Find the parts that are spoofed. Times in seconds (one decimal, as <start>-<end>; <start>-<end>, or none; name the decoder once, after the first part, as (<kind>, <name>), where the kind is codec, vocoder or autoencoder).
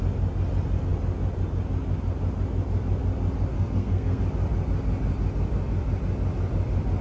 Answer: 3.5-4.2 (codec, SNAC)